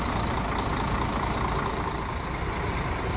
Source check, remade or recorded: recorded